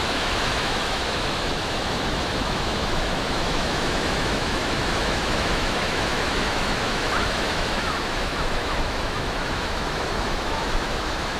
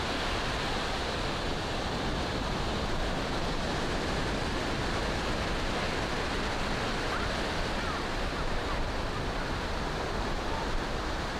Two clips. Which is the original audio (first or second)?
second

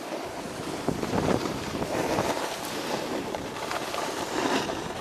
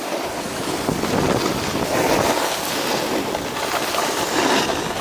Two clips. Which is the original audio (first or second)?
second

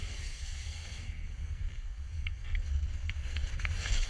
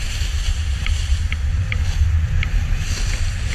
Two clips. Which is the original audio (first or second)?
second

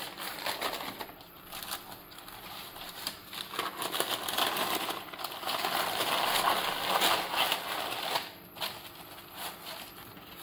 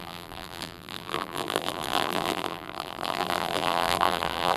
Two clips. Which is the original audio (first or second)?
first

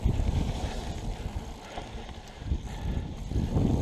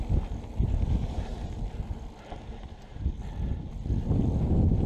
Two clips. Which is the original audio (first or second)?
second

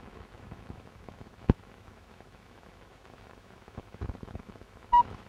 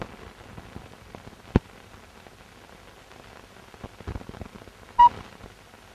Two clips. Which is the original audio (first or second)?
second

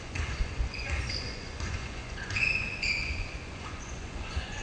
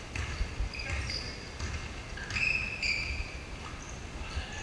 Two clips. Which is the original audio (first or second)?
second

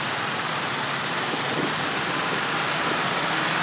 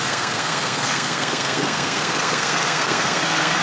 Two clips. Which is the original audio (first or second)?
first